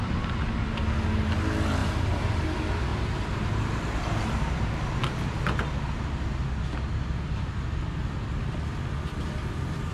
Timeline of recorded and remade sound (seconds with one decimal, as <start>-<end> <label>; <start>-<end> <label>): 0.0-1.8 recorded; 1.8-2.3 remade; 2.3-2.9 recorded; 2.9-5.2 remade; 5.2-9.9 recorded